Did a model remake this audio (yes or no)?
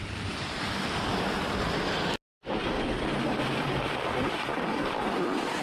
no